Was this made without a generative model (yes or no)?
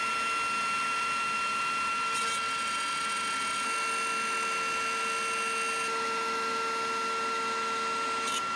yes